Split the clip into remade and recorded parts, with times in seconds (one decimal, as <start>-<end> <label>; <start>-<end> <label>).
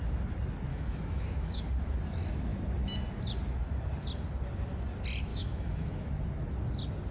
0.0-0.7 recorded; 0.7-1.6 remade; 1.6-5.3 recorded; 5.3-6.1 remade; 6.1-7.1 recorded